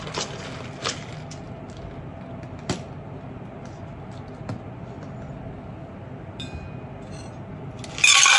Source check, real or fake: real